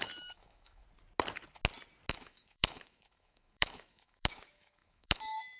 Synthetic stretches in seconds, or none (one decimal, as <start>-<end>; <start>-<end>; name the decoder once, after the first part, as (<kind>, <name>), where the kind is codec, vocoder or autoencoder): 0.0-0.8 (autoencoder, DAC-VAE); 2.1-5.6

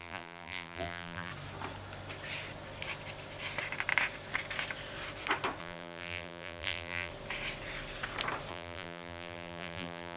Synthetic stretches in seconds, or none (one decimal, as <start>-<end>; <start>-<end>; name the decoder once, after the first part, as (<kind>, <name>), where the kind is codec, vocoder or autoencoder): 0.0-1.3 (vocoder, BigVGAN v2); 5.6-7.1; 8.5-10.2